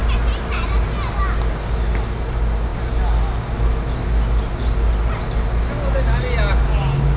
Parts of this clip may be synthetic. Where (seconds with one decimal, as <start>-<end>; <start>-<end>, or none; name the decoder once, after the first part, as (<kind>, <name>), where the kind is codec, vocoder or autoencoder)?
none